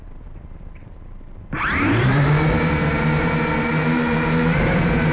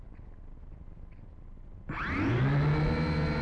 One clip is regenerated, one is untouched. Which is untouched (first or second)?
second